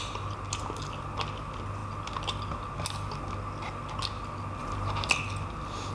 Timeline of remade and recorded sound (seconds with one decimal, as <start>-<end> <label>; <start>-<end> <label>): 0.0-4.6 recorded; 4.6-5.1 remade; 5.1-5.9 recorded